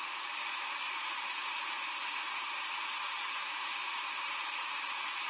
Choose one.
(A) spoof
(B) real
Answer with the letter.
B